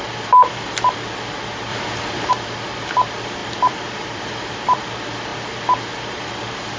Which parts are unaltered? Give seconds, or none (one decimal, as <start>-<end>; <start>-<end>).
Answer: 0.0-1.7; 2.3-3.4; 4.8-6.8